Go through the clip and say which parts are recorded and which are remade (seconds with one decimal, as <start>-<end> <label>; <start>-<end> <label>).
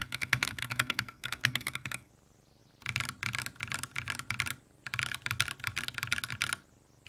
0.0-2.1 remade; 2.1-7.1 recorded